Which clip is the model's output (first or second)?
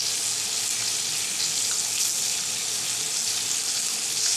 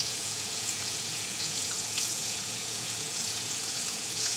second